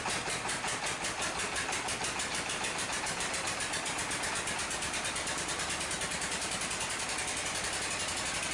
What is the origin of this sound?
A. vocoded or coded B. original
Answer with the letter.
A